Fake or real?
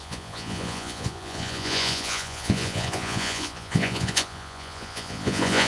fake